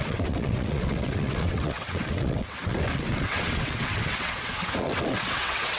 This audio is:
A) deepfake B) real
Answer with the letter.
A